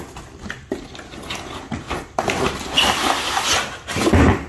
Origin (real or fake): real